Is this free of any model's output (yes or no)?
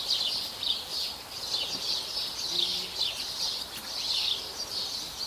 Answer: yes